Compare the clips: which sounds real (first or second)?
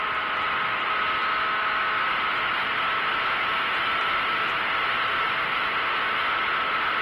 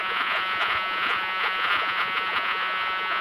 first